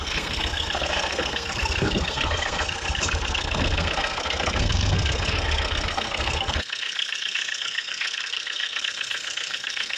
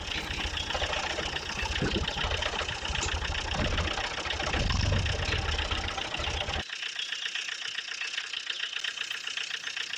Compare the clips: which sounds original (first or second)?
second